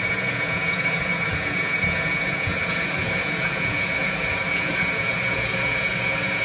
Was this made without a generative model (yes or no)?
no